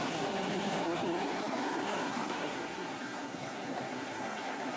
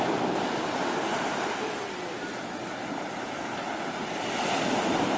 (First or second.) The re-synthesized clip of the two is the first